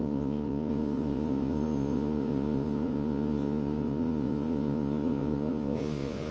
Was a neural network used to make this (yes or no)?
yes